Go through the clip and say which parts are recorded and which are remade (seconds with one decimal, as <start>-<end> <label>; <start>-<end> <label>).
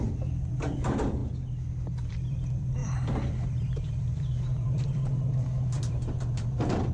0.0-1.2 remade; 1.2-2.1 recorded; 2.1-6.9 remade